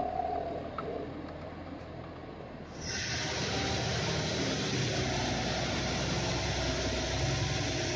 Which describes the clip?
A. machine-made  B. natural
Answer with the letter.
B